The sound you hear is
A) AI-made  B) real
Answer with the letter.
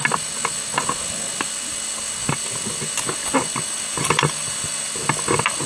B